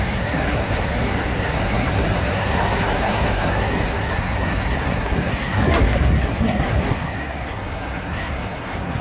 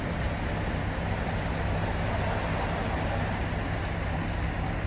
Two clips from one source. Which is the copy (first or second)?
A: first